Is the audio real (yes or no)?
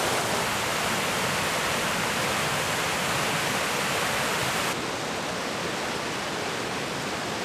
yes